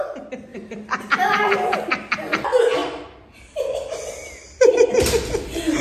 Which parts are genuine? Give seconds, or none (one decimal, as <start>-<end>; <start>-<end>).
0.0-0.5; 1.1-5.8